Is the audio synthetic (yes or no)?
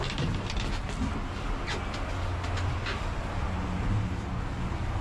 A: no